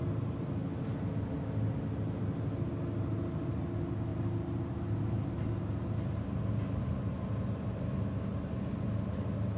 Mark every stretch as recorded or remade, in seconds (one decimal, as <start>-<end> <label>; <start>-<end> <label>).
0.0-9.6 recorded